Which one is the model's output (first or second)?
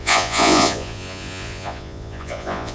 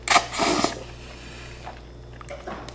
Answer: first